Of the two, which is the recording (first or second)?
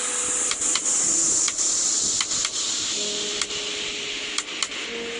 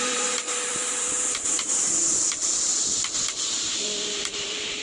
first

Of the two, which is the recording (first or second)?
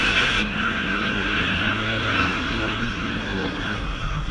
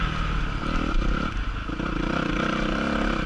second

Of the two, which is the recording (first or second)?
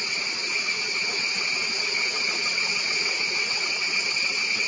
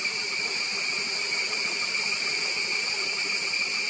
second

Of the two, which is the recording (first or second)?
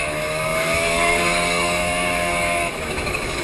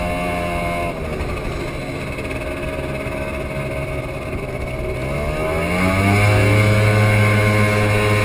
second